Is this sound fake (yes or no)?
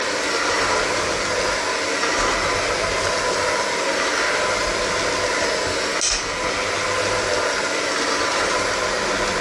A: no